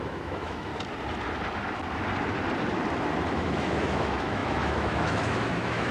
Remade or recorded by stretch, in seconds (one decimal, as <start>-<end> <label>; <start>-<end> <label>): 0.0-0.7 remade; 0.7-3.3 recorded; 3.3-5.9 remade